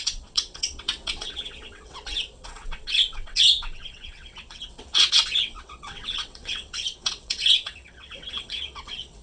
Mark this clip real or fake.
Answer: fake